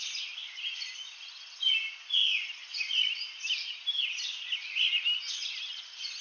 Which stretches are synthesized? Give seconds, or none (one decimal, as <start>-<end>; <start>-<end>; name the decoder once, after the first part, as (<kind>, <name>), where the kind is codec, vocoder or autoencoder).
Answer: 0.4-1.3 (vocoder, BigVGAN v2)